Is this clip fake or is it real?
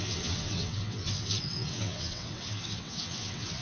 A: fake